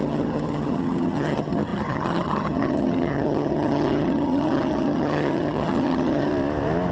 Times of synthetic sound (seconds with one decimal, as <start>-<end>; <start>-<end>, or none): 0.0-6.3